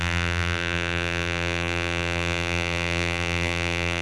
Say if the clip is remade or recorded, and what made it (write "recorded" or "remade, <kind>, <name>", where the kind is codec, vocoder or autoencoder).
remade, vocoder, BigVGAN v2